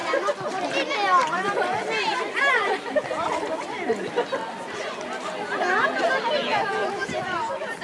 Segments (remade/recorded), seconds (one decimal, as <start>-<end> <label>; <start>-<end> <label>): 0.0-7.8 recorded